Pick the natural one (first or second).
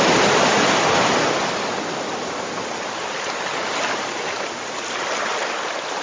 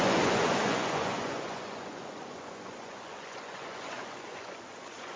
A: first